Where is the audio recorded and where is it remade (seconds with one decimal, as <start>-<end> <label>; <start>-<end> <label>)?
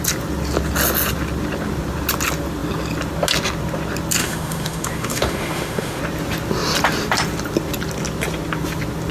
0.0-4.2 recorded; 4.2-6.0 remade; 6.0-9.1 recorded